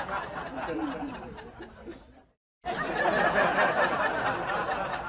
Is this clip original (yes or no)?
yes